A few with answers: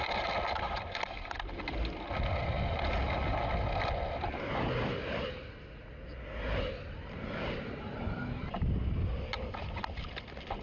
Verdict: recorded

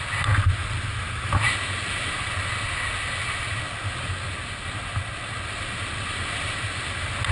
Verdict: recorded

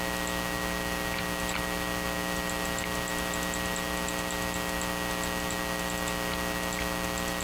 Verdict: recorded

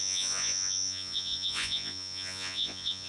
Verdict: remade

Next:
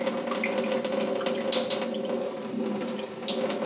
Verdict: recorded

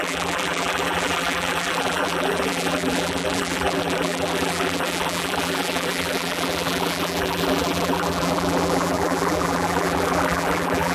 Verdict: remade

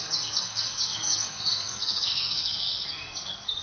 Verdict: remade